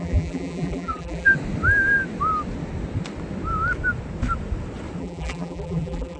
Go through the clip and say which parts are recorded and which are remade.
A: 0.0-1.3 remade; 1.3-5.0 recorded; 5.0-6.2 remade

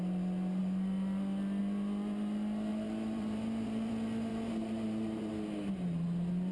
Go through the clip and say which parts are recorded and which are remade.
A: 0.0-2.7 recorded; 2.7-3.9 remade; 3.9-4.3 recorded; 4.3-5.3 remade; 5.3-6.5 recorded

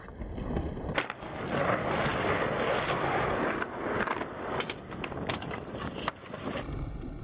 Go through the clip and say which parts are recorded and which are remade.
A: 0.0-7.2 recorded

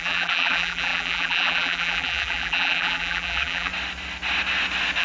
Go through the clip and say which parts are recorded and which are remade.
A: 0.0-3.7 remade; 3.7-5.0 recorded

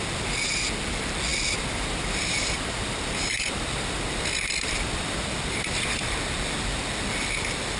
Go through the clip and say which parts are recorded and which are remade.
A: 0.0-1.3 recorded; 1.3-6.0 remade; 6.0-7.8 recorded